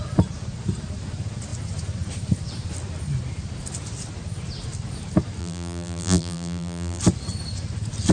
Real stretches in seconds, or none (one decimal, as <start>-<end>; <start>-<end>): 0.0-5.4; 7.0-8.1